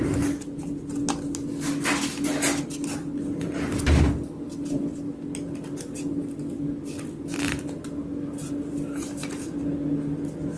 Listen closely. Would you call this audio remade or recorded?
recorded